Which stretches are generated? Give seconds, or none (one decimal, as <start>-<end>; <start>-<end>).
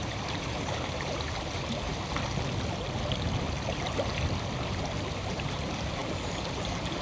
0.0-1.9; 5.2-7.0